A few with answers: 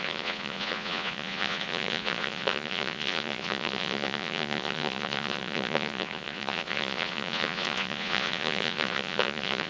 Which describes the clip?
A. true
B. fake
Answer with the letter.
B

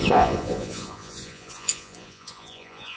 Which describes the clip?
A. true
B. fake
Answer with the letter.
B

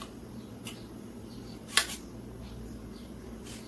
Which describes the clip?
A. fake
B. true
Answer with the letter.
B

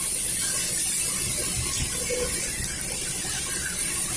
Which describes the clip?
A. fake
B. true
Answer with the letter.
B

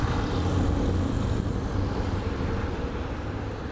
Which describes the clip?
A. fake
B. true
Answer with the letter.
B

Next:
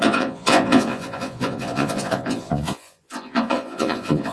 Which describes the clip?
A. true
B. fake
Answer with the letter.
B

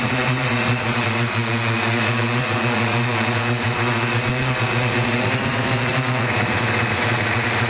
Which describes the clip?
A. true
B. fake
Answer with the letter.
B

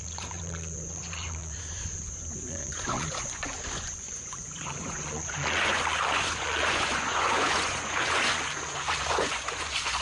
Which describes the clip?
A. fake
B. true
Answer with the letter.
A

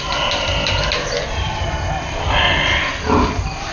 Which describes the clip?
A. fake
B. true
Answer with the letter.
B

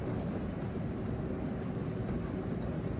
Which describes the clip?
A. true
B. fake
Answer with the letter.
A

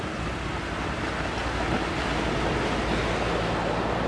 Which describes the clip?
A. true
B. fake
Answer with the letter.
A